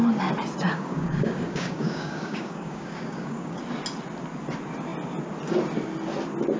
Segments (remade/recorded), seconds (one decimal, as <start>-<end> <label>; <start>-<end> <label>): 0.0-0.7 recorded; 0.7-3.6 remade; 3.6-6.6 recorded